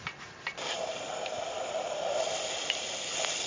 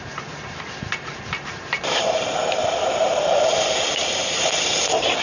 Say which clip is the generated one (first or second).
second